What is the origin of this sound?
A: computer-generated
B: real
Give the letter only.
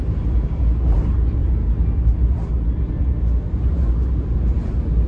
B